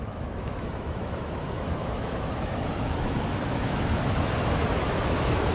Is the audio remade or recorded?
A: remade